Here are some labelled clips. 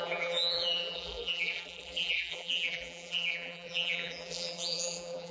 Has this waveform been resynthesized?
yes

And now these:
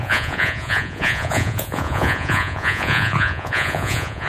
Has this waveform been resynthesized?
yes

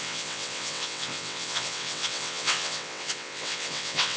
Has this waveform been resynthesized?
yes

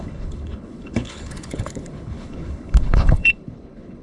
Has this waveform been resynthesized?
yes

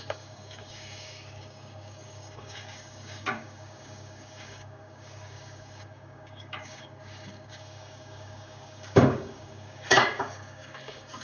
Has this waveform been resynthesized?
yes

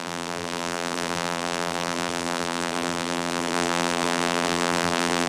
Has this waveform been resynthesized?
yes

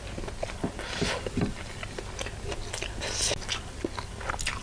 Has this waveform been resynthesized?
no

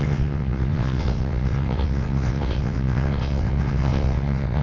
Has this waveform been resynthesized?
yes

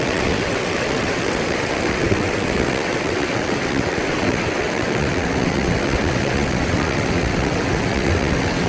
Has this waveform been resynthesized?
yes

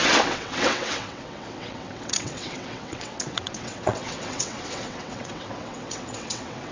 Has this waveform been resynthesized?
yes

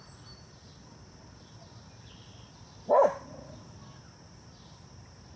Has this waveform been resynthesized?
no